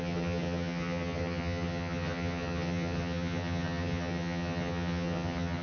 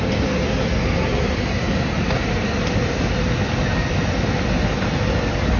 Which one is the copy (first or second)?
first